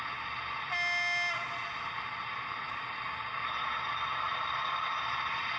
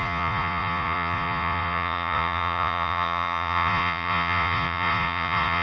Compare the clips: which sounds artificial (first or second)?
second